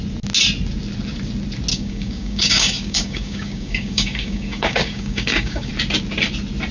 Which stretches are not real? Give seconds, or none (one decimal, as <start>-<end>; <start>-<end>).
1.7-5.7